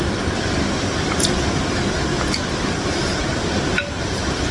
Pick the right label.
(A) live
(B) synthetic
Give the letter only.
A